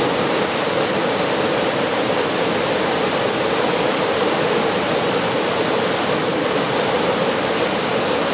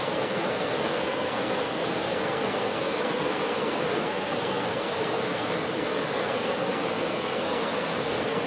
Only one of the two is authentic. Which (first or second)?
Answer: first